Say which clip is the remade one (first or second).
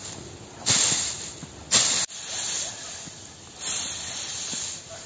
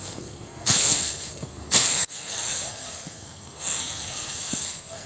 second